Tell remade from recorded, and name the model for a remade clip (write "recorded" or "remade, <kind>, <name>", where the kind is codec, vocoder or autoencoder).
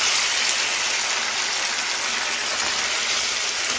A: recorded